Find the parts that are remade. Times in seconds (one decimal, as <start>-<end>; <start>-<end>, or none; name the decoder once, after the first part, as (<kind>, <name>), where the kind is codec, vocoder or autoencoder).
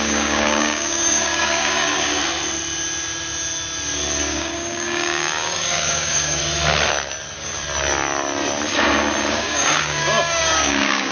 0.0-2.2 (codec, DAC); 4.2-6.4; 9.3-11.1